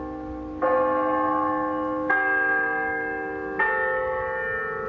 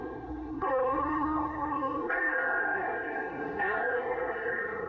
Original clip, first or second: first